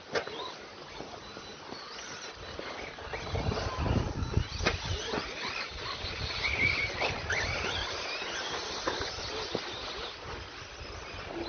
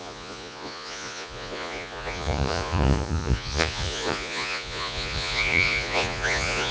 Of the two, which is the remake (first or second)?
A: second